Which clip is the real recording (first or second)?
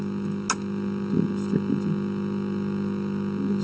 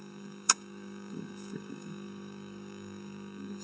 first